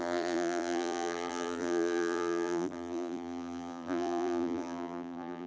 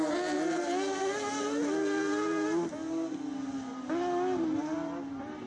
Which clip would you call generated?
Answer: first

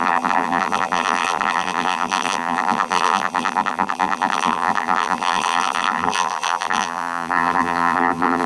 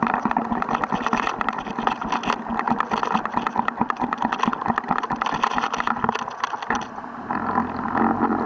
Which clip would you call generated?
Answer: first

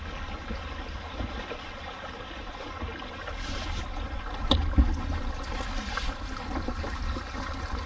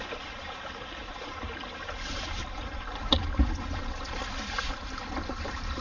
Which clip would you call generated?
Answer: second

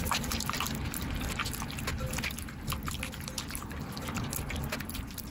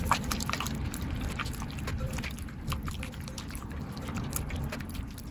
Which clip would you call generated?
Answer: second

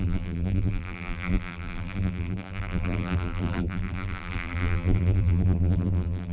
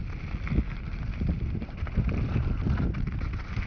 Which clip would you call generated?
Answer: first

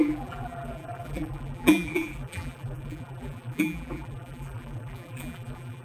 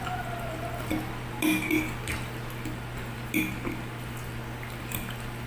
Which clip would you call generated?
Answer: first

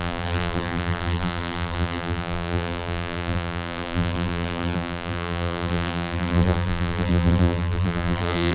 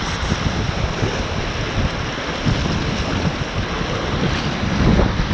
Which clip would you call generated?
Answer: first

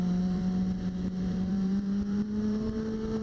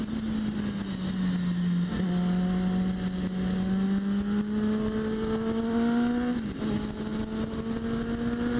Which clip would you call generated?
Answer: first